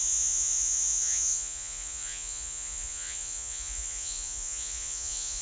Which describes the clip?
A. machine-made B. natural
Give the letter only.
A